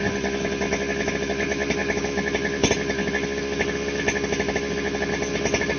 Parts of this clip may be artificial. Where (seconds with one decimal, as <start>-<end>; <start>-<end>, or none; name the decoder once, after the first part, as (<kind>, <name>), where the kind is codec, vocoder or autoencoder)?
none